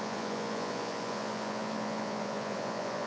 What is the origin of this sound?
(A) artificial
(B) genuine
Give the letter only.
A